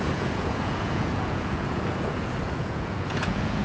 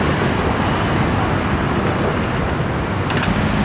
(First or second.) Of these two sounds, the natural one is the second